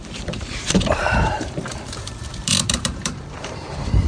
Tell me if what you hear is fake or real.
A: fake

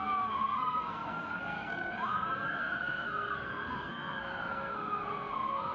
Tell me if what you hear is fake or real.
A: fake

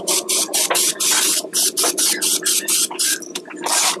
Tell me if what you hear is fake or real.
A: real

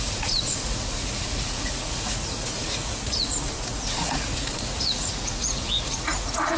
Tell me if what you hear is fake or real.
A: fake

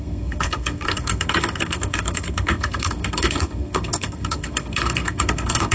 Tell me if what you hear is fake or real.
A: fake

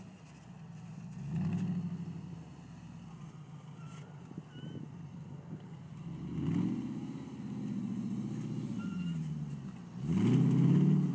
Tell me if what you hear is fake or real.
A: real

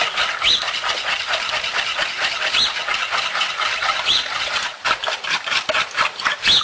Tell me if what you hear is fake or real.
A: real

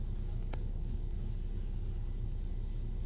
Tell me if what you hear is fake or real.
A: real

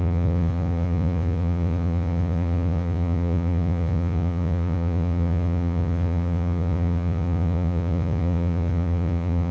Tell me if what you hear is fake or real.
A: fake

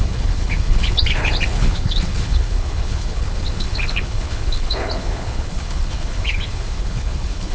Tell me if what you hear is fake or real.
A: fake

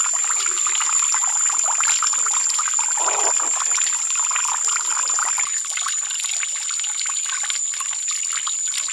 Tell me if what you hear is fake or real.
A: real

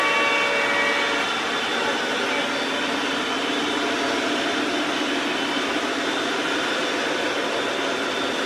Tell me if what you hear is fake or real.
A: real